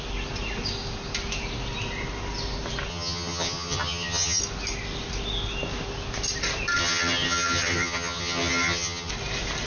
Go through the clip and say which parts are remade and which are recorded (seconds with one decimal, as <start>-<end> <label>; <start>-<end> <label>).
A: 0.0-2.9 recorded; 2.9-4.4 remade; 4.4-6.8 recorded; 6.8-9.1 remade; 9.1-9.7 recorded